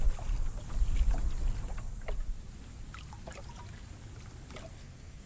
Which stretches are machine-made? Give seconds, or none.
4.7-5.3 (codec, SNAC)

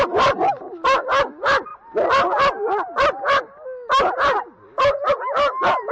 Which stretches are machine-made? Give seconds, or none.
none

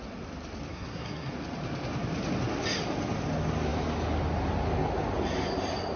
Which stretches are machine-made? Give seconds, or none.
0.7-1.3 (codec, SNAC)

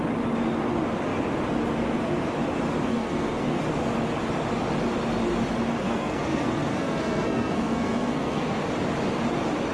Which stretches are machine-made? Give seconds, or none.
2.9-3.6 (codec, SNAC); 5.8-8.6